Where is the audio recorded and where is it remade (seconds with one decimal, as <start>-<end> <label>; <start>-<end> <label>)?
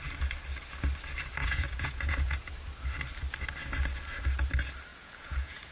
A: 0.0-1.4 recorded; 1.4-2.5 remade; 2.5-4.9 recorded; 4.9-5.7 remade